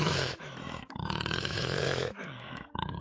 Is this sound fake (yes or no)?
yes